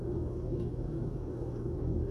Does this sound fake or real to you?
fake